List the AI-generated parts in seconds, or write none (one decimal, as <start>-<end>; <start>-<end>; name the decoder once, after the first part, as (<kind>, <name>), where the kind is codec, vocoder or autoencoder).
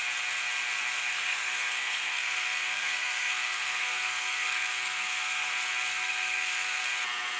1.1-5.5 (codec, SNAC); 5.9-6.8